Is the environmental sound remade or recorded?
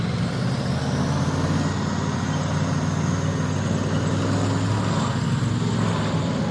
recorded